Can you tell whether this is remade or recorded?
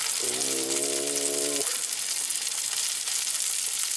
recorded